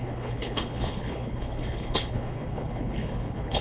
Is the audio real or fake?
fake